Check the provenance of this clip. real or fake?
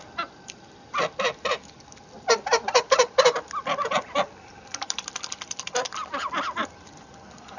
real